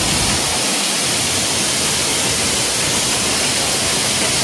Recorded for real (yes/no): yes